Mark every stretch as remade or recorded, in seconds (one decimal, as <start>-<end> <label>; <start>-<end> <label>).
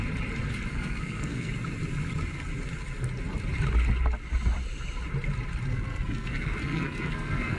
0.0-0.7 recorded; 0.7-1.5 remade; 1.5-5.7 recorded; 5.7-7.6 remade